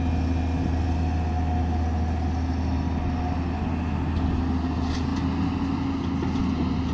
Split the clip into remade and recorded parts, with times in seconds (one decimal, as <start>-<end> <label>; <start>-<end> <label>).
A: 0.0-6.9 recorded

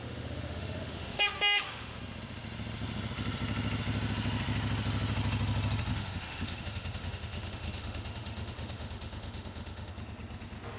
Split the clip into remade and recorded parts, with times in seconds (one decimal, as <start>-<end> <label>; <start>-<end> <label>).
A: 0.0-2.0 remade; 2.0-5.9 recorded; 5.9-9.9 remade; 9.9-10.8 recorded

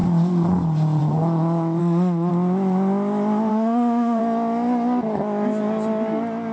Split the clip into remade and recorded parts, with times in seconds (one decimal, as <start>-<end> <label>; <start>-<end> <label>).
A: 0.0-1.8 recorded; 1.8-2.3 remade; 2.3-3.5 recorded; 3.5-4.2 remade; 4.2-6.5 recorded

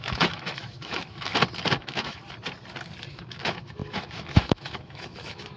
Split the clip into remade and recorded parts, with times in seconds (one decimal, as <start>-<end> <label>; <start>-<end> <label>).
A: 0.0-1.3 remade; 1.3-1.8 recorded; 1.8-2.2 remade; 2.2-3.1 recorded; 3.1-5.6 remade

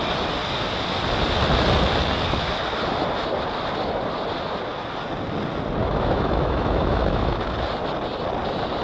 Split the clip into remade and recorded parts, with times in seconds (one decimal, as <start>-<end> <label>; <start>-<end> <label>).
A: 0.0-5.8 recorded; 5.8-7.4 remade; 7.4-8.8 recorded

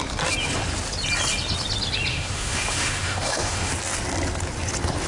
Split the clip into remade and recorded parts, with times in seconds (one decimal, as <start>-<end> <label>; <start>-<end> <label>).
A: 0.0-2.1 recorded; 2.1-3.7 remade; 3.7-5.1 recorded